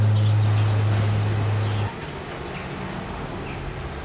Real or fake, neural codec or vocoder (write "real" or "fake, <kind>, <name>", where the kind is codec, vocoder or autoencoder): real